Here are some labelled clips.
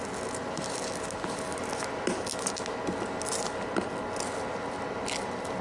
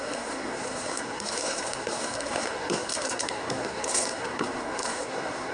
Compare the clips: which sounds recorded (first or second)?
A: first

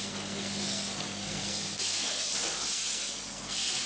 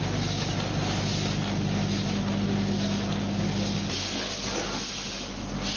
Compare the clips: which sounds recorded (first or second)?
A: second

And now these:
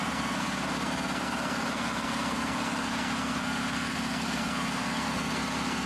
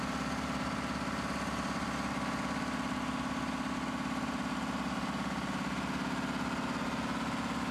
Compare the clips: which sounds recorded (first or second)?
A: second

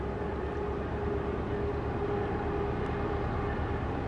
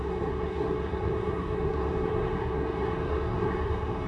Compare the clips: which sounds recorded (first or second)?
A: first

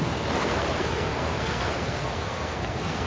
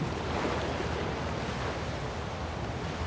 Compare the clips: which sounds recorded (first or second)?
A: second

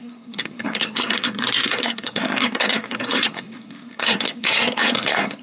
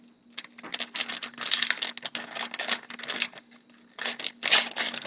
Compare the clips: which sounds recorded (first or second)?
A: second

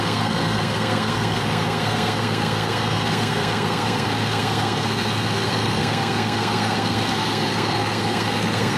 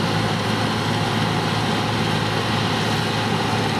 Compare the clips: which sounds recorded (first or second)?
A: second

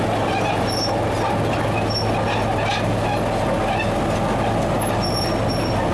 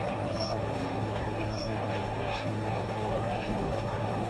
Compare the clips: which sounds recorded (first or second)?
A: first